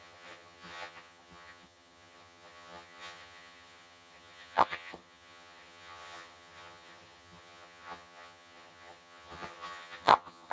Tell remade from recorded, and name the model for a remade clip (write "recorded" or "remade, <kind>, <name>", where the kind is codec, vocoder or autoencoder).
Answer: remade, vocoder, HiFi-GAN